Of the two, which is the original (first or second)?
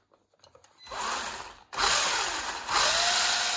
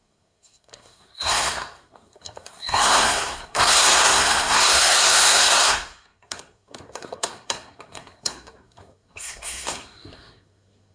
first